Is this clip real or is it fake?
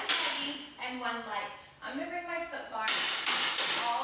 real